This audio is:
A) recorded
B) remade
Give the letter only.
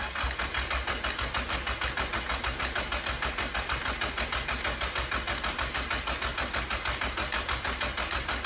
A